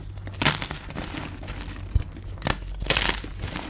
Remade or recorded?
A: recorded